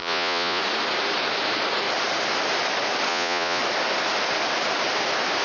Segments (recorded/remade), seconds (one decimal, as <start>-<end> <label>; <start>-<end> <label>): 0.0-0.6 remade; 0.6-3.1 recorded; 3.1-3.6 remade; 3.6-5.4 recorded